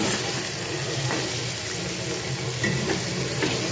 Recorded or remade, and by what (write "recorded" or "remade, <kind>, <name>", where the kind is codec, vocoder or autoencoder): recorded